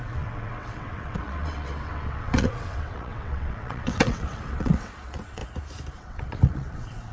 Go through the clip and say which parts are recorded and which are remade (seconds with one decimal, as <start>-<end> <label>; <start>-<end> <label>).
0.0-5.4 remade; 5.4-5.9 recorded; 5.9-7.1 remade